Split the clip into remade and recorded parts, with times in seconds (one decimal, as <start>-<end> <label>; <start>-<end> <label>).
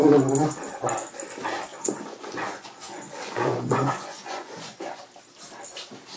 0.0-1.7 recorded; 1.7-5.0 remade; 5.0-6.2 recorded